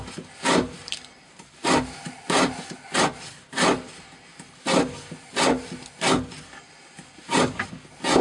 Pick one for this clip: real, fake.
real